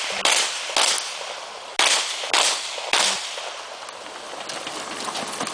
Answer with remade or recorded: recorded